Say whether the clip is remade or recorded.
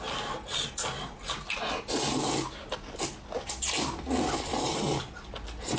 recorded